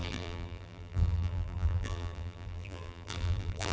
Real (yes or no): no